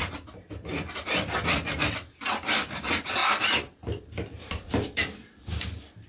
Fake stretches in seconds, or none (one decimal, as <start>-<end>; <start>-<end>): 0.0-3.2; 4.5-6.1